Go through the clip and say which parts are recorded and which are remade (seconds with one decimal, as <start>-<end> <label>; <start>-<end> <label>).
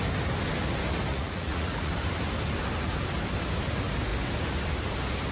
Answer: 0.0-1.1 recorded; 1.1-1.9 remade; 1.9-5.3 recorded